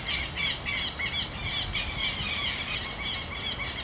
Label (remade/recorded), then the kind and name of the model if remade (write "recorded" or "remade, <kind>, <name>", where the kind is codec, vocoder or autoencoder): recorded